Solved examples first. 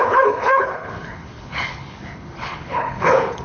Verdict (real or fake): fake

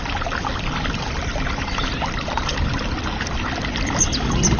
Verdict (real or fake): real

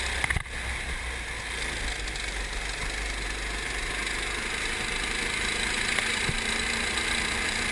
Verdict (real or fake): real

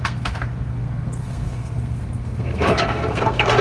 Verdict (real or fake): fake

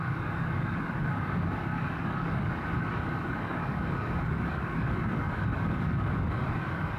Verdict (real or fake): fake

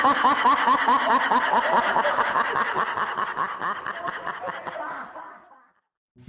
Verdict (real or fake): real